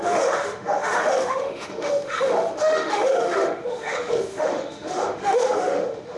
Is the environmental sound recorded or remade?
remade